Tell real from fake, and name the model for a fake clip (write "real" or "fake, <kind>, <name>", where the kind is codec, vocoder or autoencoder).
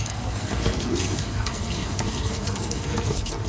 fake, codec, SNAC